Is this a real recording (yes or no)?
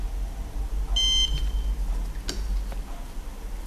yes